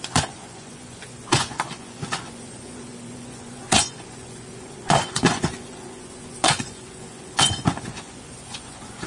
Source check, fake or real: fake